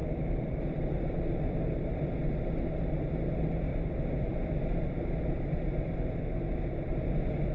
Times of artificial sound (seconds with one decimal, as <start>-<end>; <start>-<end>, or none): none

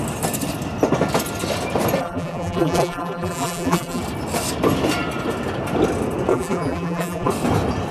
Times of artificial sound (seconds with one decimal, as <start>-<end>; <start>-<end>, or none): 2.0-4.0; 6.3-7.3

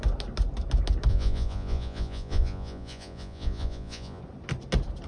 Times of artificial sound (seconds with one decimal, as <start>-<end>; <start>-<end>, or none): 1.1-4.2

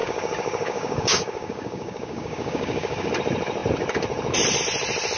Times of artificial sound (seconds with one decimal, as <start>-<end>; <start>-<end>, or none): 0.0-3.1

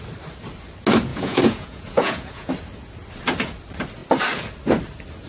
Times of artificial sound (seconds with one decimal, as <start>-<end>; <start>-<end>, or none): 1.1-2.5

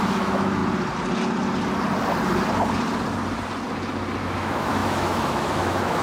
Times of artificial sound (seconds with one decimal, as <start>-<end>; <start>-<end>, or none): 0.0-0.6; 4.2-6.0

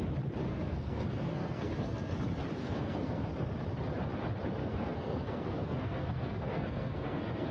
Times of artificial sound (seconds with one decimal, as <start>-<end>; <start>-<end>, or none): 0.4-2.2; 2.6-3.3; 4.6-7.5

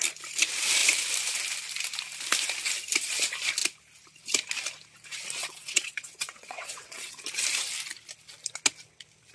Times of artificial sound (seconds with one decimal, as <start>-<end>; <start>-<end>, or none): 5.4-7.1